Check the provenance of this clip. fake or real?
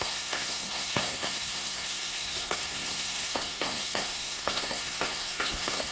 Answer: fake